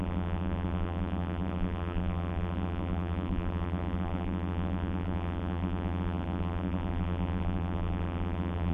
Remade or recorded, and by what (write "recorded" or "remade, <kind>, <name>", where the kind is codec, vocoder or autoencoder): remade, vocoder, BigVGAN v2